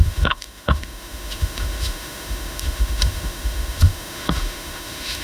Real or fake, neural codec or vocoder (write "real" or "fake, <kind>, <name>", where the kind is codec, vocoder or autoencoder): fake, autoencoder, DAC-VAE